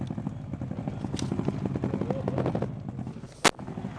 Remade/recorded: recorded